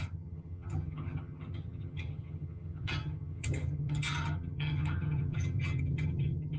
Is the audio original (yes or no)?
no